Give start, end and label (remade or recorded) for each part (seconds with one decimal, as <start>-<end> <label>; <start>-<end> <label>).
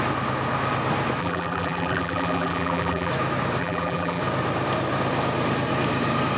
0.0-1.2 recorded; 1.2-3.1 remade; 3.1-3.6 recorded; 3.6-4.2 remade; 4.2-6.4 recorded